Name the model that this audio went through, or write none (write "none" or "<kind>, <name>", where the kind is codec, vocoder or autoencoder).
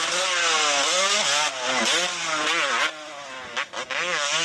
none